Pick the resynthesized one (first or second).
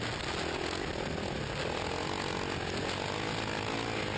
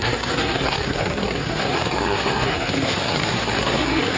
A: second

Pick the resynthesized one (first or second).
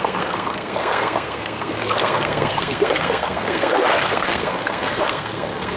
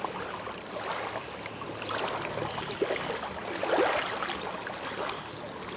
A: first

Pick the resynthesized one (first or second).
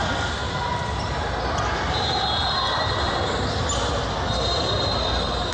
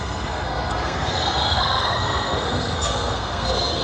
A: second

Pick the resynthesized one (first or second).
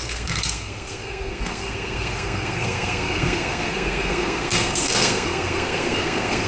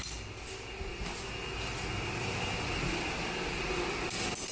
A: first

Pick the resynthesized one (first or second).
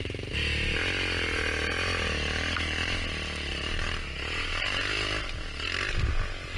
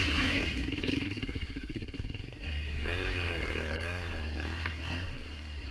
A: second